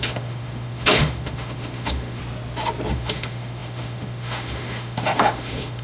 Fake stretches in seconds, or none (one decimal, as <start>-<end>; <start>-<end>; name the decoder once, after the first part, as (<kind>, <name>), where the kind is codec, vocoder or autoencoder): 0.0-2.2 (autoencoder, DAC-VAE); 2.9-5.8